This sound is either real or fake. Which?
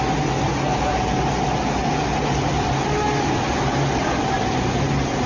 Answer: real